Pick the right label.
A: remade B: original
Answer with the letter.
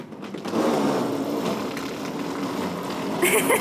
B